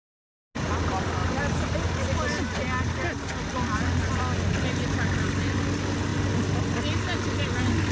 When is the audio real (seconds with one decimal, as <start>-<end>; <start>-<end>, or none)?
0.0-7.9